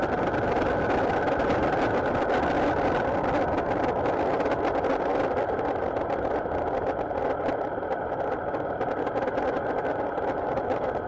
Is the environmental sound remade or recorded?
recorded